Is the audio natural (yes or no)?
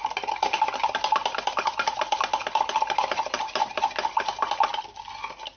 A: yes